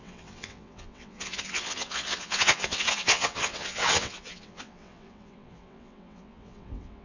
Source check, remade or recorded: remade